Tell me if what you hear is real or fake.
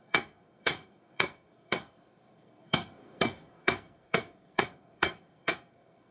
fake